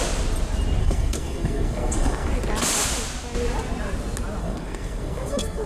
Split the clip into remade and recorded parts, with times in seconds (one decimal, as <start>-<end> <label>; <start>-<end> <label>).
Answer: 0.0-0.8 recorded; 0.8-2.3 remade; 2.3-4.4 recorded; 4.4-5.7 remade